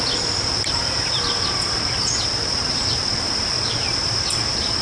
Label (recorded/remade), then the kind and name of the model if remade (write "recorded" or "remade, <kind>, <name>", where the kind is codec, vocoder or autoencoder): remade, vocoder, BigVGAN v2